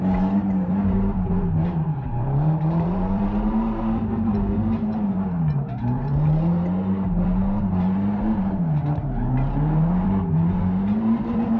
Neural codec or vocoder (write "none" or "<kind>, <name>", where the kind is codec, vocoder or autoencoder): vocoder, BigVGAN v2